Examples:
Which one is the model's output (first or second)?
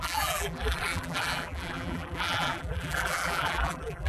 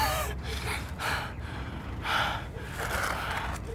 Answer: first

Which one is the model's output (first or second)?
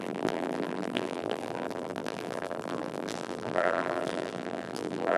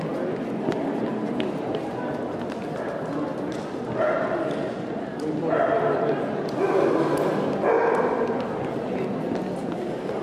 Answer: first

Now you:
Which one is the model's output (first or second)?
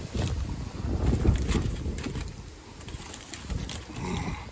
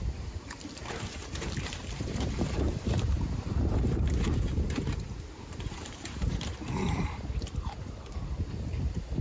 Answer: second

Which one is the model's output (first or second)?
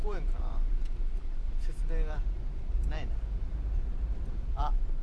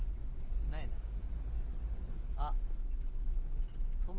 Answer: first